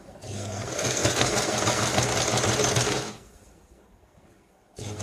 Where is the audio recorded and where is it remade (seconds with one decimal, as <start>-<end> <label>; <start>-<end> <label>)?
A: 0.0-2.1 remade; 2.1-2.7 recorded; 2.7-5.0 remade